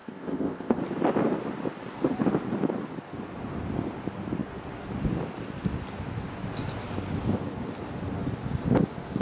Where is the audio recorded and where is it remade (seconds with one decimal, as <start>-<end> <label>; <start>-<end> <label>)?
0.0-0.8 remade; 0.8-9.2 recorded